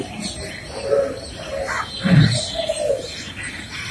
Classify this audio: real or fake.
real